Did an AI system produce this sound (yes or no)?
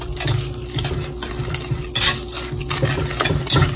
no